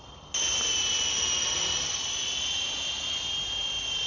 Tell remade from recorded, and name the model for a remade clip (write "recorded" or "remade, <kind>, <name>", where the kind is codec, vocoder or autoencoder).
recorded